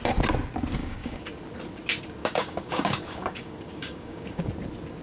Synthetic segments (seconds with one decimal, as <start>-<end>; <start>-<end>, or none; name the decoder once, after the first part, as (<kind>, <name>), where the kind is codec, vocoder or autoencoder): 0.8-1.3 (codec, DAC); 2.2-4.5